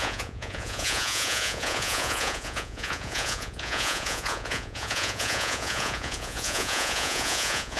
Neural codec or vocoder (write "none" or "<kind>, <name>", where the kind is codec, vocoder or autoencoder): vocoder, Vocos